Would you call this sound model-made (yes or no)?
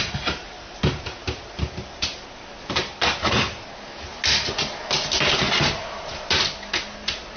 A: no